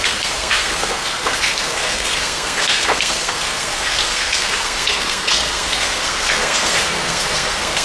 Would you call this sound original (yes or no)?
no